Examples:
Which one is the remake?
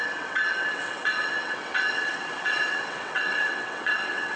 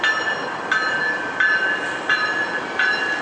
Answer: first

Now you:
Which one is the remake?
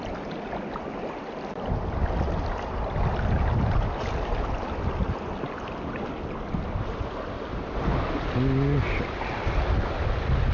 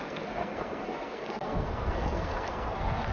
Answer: second